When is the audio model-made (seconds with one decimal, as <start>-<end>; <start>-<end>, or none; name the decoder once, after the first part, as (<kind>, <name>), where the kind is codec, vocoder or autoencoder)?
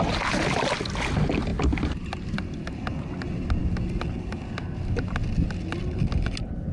none